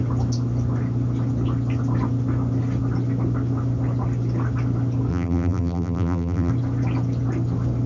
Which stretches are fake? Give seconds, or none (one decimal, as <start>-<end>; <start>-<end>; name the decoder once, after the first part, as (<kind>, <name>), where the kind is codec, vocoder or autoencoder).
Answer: 5.1-6.5 (vocoder, BigVGAN v2)